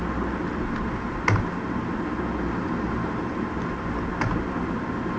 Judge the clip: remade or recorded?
recorded